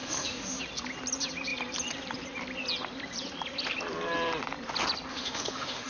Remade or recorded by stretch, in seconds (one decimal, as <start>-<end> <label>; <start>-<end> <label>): 0.0-0.6 remade; 0.6-5.1 recorded; 5.1-5.9 remade